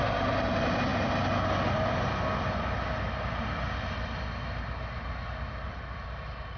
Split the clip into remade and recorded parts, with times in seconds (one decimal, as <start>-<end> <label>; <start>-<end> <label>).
0.0-6.6 recorded